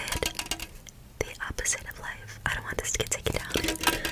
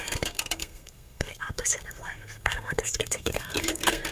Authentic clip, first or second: first